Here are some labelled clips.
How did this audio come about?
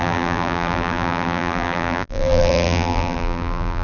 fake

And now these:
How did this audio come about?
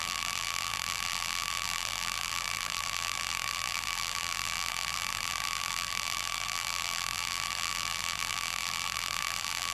fake